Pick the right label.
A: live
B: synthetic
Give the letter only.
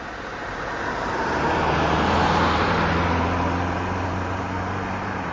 B